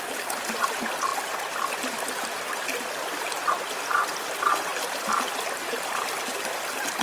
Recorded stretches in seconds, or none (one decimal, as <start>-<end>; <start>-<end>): 0.0-7.0

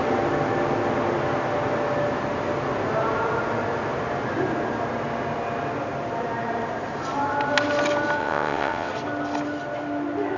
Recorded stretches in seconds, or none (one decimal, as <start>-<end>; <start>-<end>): 0.0-8.2; 8.9-10.4